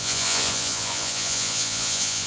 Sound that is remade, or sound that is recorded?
remade